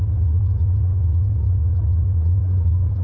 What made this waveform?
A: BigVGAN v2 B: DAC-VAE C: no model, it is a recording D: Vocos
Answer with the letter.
C